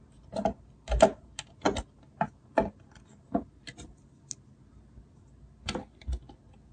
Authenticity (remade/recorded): recorded